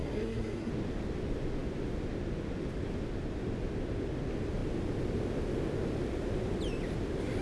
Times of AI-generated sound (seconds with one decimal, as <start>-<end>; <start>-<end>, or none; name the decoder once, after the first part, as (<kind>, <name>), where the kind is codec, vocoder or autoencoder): 0.0-0.7 (codec, SNAC)